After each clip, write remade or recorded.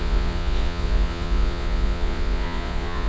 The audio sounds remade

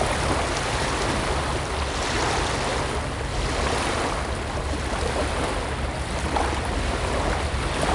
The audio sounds recorded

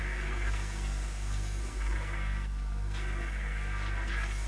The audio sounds remade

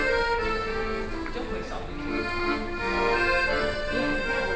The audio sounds recorded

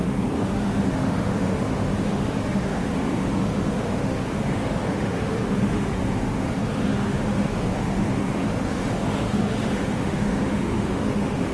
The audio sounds remade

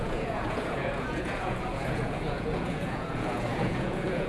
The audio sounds remade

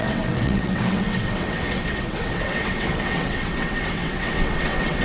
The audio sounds remade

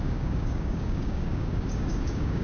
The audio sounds remade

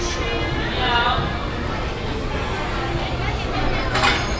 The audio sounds recorded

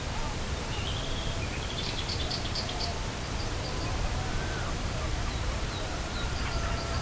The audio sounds remade